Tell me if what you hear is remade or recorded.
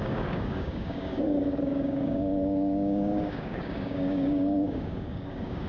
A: remade